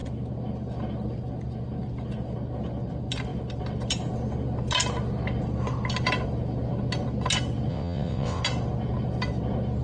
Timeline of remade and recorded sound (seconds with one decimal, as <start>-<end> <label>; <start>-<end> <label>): 0.0-7.7 recorded; 7.7-8.4 remade; 8.4-9.8 recorded

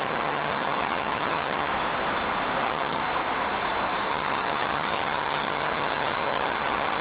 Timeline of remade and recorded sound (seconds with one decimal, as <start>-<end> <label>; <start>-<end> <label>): 0.0-1.7 remade; 1.7-2.6 recorded; 2.6-3.0 remade; 3.0-4.1 recorded; 4.1-7.0 remade

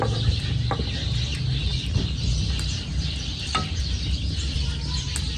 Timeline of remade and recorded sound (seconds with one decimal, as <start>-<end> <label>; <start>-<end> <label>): 0.0-1.7 recorded; 1.7-4.9 remade; 4.9-5.4 recorded

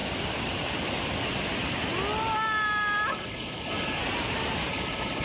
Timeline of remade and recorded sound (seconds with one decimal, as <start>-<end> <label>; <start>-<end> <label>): 0.0-3.1 recorded; 3.1-4.0 remade; 4.0-4.7 recorded; 4.7-5.2 remade